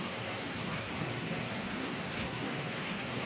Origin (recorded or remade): remade